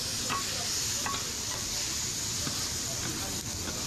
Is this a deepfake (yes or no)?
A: no